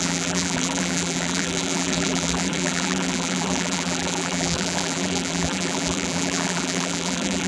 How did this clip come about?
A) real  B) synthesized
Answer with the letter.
B